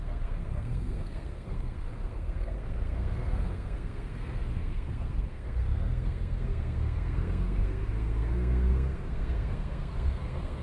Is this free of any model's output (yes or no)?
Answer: no